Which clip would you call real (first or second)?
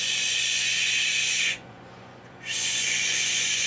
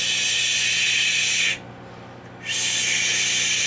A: second